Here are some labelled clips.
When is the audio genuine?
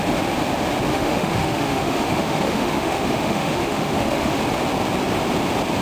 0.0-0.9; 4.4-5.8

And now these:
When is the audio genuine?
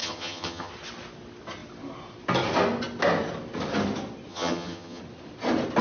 0.7-4.3; 5.0-5.8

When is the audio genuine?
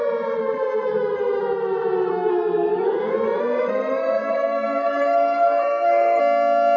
0.0-0.4; 1.4-2.1; 6.2-6.8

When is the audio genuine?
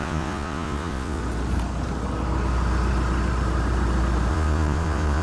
1.2-4.3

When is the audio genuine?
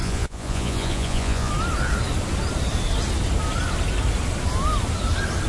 1.5-5.5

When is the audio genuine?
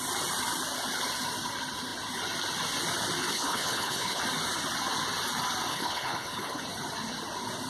0.0-3.3; 4.2-5.7; 6.6-7.7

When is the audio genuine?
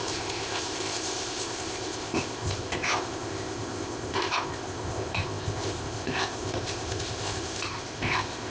none